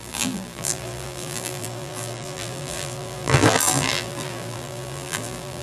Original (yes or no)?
no